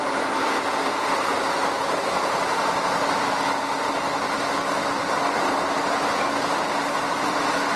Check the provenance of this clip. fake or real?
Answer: real